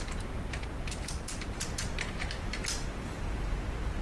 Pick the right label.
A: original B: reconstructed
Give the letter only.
B